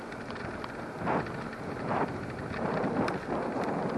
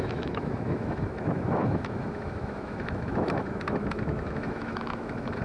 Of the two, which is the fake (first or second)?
second